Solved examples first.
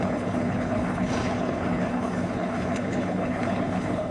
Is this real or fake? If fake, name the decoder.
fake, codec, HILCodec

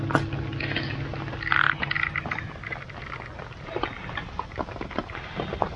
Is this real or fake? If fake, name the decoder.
real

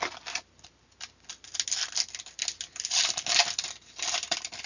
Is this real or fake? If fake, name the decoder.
real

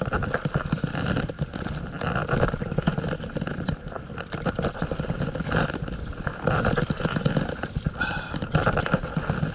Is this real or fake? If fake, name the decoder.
real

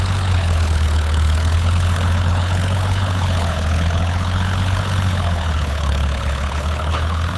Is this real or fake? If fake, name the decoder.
fake, codec, HILCodec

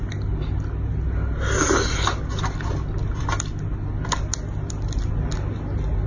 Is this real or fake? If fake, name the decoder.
real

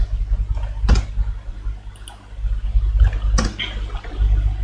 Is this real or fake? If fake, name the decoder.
real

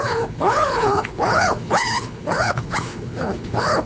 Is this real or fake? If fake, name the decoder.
fake, codec, HILCodec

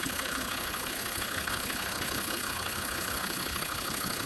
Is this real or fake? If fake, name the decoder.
fake, codec, HILCodec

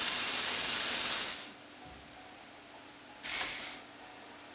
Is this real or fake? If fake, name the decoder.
real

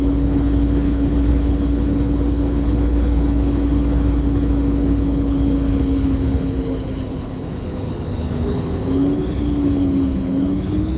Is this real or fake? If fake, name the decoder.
fake, codec, HILCodec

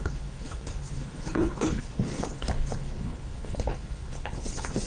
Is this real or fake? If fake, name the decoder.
fake, codec, HILCodec